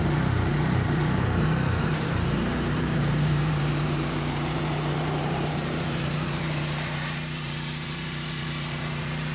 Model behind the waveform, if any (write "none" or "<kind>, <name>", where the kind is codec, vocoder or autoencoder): vocoder, BigVGAN v2